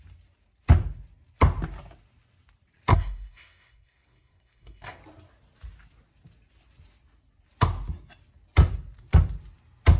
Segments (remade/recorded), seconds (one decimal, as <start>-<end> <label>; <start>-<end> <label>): 0.0-2.9 recorded; 2.9-5.0 remade; 5.0-10.0 recorded